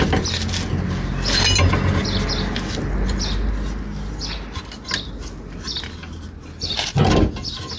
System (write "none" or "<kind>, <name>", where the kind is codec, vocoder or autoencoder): none